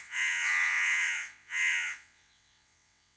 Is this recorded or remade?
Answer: remade